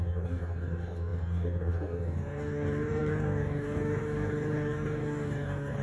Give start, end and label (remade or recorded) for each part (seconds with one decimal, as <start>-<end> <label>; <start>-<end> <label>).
0.0-5.8 remade